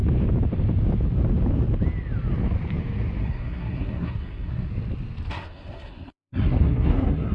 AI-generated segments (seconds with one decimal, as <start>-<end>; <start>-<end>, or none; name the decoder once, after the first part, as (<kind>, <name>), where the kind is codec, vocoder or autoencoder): 3.2-4.7 (codec, SNAC); 5.3-7.3